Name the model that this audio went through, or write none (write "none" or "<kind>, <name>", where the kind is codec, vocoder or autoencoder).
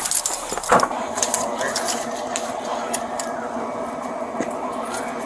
none